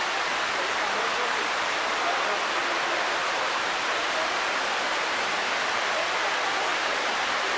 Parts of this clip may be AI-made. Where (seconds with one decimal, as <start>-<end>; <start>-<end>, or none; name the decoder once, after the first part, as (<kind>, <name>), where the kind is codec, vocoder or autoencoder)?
2.6-5.3 (vocoder, BigVGAN v2); 6.7-7.6